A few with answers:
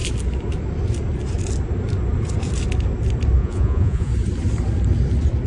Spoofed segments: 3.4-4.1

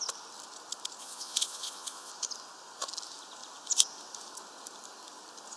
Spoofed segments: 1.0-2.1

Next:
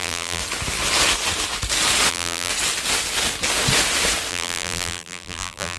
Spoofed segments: 0.0-0.4; 2.1-2.5; 4.3-5.8

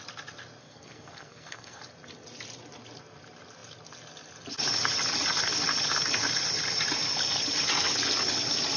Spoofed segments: 0.6-1.8